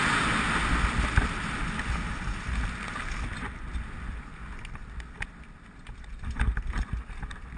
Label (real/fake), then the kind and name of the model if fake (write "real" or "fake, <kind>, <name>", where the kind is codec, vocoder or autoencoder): real